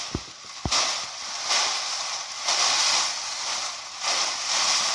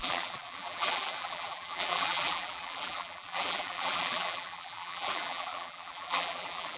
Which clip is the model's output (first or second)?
second